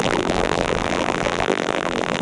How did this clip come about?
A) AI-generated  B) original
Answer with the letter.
A